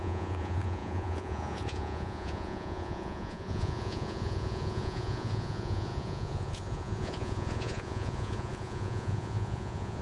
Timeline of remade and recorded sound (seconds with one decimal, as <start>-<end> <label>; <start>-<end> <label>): 0.0-10.0 remade